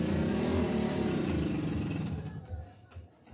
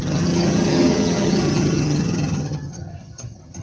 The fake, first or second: second